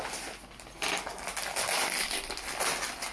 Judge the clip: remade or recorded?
recorded